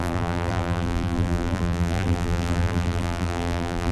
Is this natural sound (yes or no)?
no